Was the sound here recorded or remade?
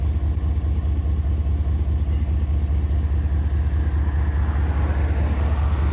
recorded